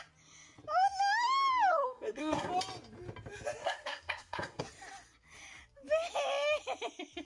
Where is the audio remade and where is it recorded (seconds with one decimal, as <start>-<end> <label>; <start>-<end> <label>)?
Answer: 0.0-1.7 recorded; 1.7-2.5 remade; 2.5-3.6 recorded; 3.6-4.6 remade; 4.6-7.2 recorded